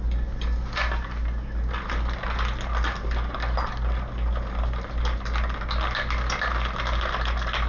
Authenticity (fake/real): real